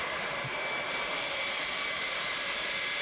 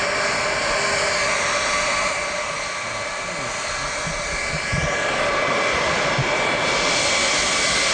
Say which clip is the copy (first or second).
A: first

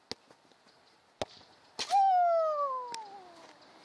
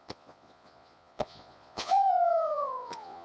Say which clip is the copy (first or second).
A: second